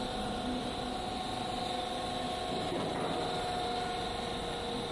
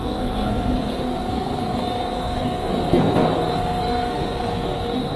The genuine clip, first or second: first